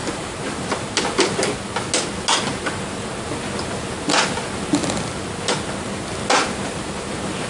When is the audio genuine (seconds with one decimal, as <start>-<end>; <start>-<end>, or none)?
0.7-2.5; 3.1-7.5

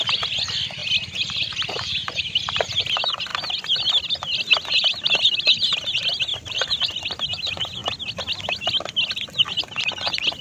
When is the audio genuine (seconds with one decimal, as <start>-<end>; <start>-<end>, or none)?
0.8-2.2; 3.3-4.0; 7.8-9.6

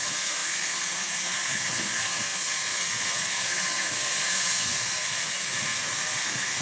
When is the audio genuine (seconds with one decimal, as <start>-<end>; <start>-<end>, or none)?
none

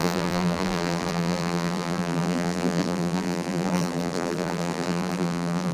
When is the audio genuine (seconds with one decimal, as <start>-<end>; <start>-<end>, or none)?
none

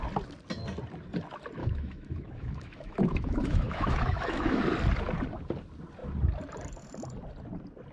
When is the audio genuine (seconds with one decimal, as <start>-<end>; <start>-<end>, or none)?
0.0-1.6; 4.6-7.9

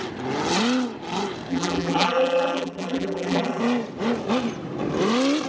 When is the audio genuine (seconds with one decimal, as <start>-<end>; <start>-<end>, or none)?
0.0-1.5; 3.6-5.5